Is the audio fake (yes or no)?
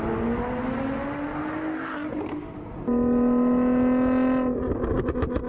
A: no